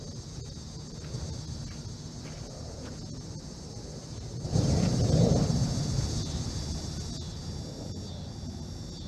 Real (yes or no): yes